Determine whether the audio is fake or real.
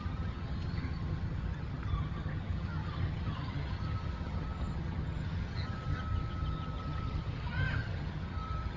fake